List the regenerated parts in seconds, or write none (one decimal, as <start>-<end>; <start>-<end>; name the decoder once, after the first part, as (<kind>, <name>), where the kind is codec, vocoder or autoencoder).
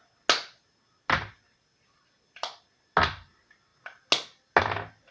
none